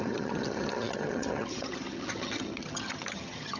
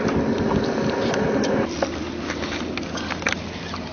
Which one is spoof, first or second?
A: first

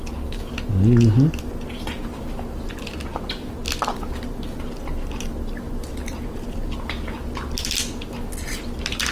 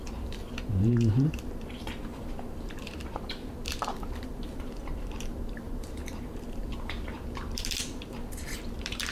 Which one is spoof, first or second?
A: second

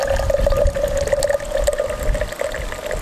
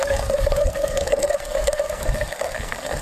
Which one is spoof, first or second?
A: second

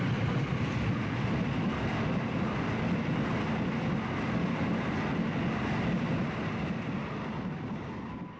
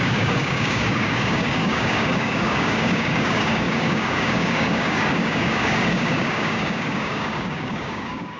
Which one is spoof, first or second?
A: second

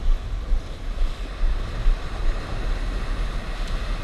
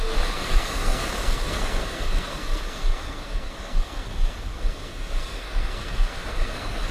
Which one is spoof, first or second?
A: second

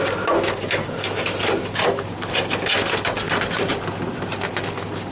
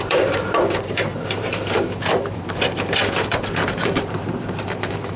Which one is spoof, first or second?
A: second